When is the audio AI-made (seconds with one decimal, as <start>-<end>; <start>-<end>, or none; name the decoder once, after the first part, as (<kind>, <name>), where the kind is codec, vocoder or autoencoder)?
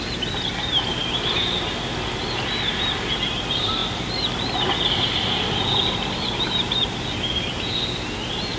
none